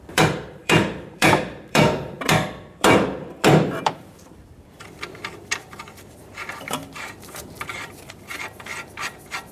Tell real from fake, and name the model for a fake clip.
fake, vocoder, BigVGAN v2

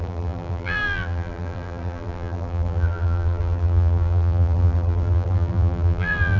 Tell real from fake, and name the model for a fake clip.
fake, vocoder, BigVGAN v2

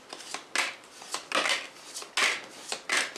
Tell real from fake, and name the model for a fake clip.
real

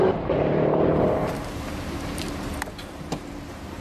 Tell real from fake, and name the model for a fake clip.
fake, vocoder, BigVGAN v2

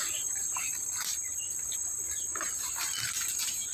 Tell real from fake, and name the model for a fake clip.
fake, vocoder, BigVGAN v2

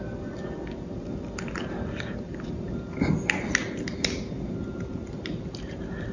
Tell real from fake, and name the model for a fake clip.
real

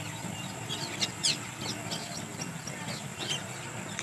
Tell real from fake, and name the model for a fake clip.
real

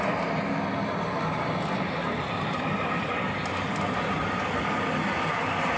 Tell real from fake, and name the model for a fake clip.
fake, vocoder, BigVGAN v2